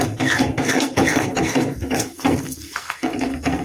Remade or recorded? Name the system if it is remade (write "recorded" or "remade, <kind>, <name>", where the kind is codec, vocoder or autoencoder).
remade, codec, SNAC